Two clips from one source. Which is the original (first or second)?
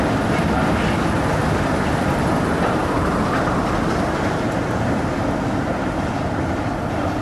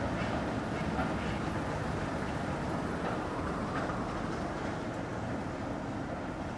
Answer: second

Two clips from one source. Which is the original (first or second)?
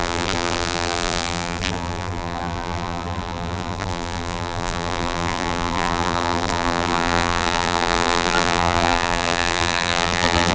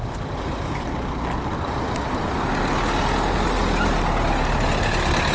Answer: second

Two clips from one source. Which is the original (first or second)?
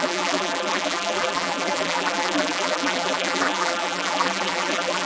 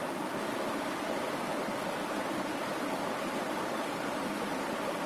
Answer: second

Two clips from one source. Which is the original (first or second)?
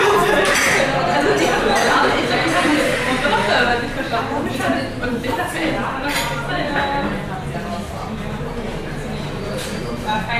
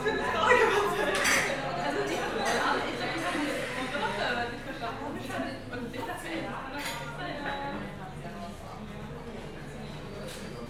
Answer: second